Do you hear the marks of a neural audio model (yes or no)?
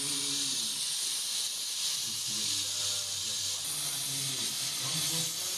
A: no